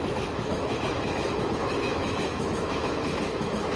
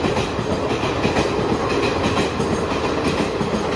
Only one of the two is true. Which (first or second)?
second